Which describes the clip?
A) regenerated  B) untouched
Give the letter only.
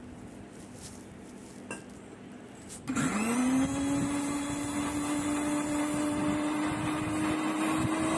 B